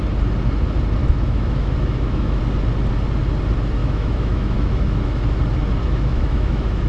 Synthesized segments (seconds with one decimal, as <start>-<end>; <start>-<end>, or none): 1.0-2.4; 3.8-5.2; 5.8-6.9